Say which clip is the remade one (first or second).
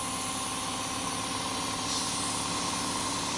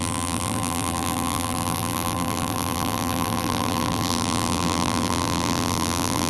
second